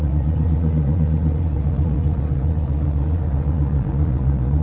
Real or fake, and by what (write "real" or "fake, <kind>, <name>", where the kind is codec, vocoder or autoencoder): fake, vocoder, Vocos